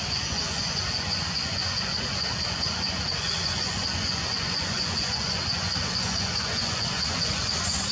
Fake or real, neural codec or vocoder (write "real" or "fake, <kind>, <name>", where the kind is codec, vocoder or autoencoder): fake, vocoder, Vocos